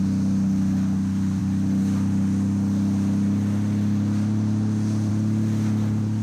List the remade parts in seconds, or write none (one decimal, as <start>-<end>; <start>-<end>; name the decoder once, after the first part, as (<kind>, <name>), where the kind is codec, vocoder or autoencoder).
none